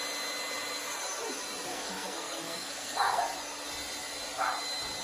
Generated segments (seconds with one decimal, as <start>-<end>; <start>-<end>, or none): 1.7-3.2